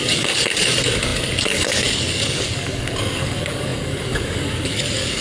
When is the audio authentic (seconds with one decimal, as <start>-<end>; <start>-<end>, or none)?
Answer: none